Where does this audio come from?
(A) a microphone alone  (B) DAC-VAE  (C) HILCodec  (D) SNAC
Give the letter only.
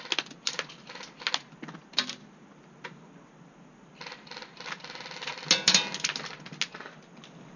A